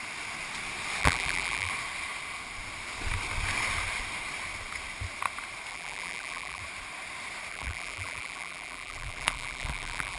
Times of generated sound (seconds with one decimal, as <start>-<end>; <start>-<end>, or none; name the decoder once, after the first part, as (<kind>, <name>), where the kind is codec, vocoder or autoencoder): 1.0-1.7 (vocoder, BigVGAN v2); 5.7-6.6; 7.5-10.2